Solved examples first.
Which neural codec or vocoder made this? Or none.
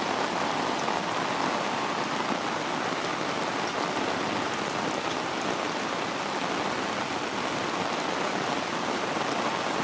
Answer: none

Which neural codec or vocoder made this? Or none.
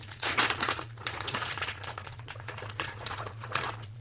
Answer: vocoder, Vocos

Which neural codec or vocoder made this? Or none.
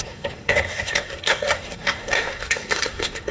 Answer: codec, SNAC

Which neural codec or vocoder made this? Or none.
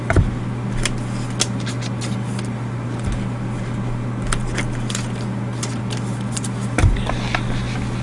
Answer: none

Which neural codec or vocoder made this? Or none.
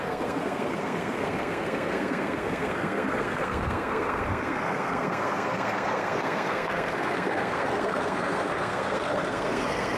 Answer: codec, SNAC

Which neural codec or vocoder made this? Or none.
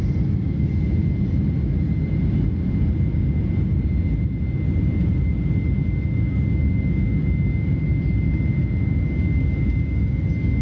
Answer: none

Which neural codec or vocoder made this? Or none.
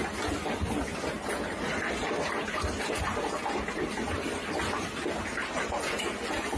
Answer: none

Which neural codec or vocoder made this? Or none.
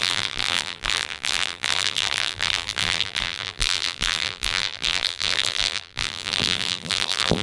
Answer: vocoder, BigVGAN v2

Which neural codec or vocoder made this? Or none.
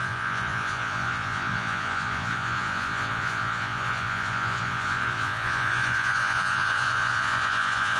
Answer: vocoder, Vocos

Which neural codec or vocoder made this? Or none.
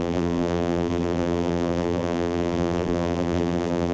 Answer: vocoder, BigVGAN v2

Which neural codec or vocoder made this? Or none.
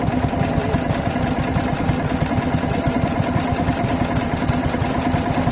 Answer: none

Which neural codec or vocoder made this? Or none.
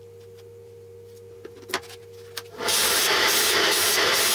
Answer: none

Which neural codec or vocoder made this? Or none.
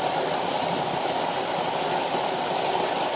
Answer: vocoder, BigVGAN v2